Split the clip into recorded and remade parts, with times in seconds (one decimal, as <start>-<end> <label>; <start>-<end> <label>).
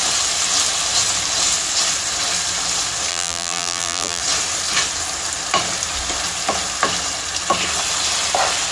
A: 0.0-3.1 recorded; 3.1-4.2 remade; 4.2-8.7 recorded